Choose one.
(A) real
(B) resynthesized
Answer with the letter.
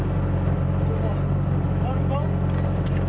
A